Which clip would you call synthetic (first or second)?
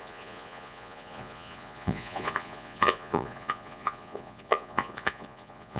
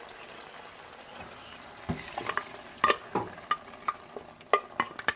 first